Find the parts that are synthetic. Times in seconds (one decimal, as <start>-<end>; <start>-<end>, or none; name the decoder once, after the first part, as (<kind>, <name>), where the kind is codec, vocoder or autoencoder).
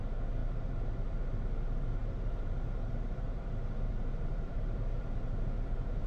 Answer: 0.4-1.1 (vocoder, BigVGAN v2); 2.0-6.1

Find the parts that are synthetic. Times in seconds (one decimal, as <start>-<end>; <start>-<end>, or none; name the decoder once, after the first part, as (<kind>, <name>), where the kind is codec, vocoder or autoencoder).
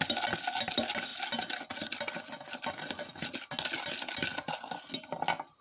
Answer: none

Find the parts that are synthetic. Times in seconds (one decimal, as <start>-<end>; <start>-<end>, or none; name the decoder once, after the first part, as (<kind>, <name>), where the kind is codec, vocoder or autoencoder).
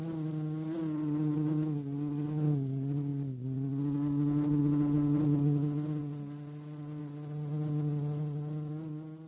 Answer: 6.0-7.0 (vocoder, BigVGAN v2)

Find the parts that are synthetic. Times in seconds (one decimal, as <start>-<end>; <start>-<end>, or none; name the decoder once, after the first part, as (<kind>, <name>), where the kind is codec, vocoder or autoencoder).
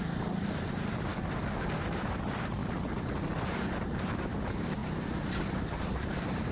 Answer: 0.0-1.1 (vocoder, BigVGAN v2); 1.9-2.6; 3.4-4.8; 5.9-6.5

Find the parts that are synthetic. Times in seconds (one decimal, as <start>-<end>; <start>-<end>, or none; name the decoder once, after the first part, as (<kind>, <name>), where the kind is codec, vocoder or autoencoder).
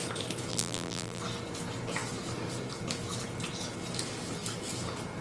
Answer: 0.5-1.2 (vocoder, BigVGAN v2)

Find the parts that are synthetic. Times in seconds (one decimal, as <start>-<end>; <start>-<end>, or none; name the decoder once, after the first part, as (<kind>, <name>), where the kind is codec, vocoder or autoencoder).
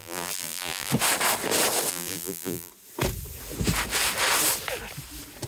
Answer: 0.0-0.9 (vocoder, BigVGAN v2); 1.9-2.7